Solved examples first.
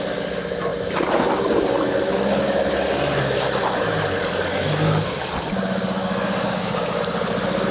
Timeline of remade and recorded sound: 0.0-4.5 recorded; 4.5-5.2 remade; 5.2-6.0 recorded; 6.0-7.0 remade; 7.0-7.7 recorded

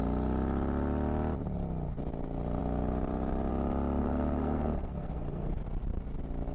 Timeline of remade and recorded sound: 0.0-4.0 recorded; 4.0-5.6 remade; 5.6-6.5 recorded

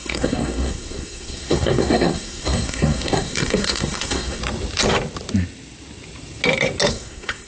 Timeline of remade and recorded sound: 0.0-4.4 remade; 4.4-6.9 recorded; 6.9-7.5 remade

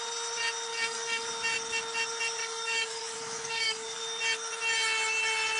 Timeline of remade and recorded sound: 0.0-0.7 recorded; 0.7-1.3 remade; 1.3-2.4 recorded; 2.4-4.0 remade; 4.0-5.6 recorded